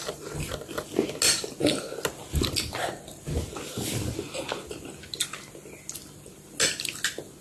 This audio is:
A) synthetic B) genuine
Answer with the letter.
B